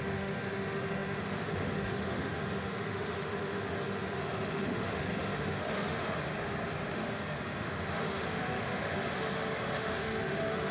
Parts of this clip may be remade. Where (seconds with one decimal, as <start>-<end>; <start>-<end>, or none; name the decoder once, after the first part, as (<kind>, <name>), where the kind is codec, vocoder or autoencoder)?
0.0-6.3 (autoencoder, DAC-VAE); 6.9-10.7